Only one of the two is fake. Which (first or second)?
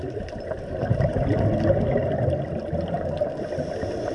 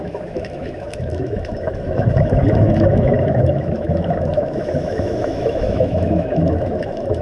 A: second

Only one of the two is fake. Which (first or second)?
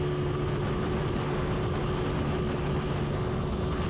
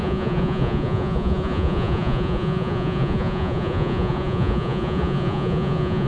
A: second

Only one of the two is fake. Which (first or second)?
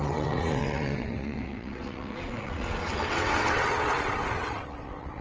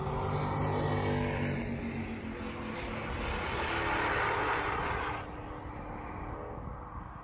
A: first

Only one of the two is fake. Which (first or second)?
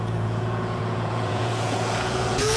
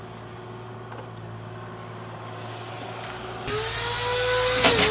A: first